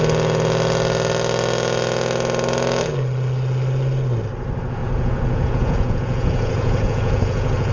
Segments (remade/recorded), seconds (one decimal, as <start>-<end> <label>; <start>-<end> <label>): 0.0-4.8 recorded; 4.8-7.7 remade